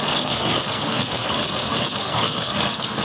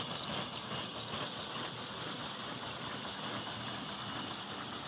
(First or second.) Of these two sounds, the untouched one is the second